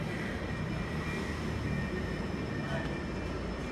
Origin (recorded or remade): recorded